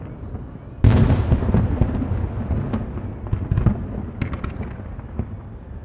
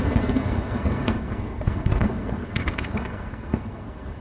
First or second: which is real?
first